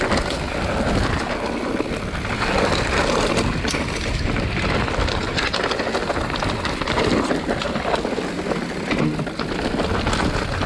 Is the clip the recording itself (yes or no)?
yes